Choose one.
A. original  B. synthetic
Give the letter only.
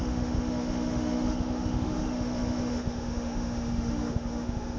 B